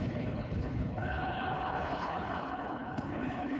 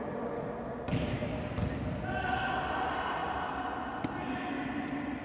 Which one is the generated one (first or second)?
first